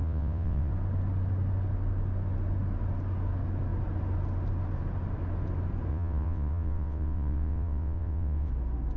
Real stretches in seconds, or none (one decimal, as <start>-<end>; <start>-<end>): 0.7-5.9; 8.5-9.0